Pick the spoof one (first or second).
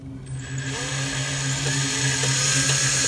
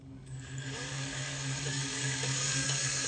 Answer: second